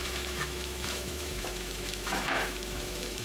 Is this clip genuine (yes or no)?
no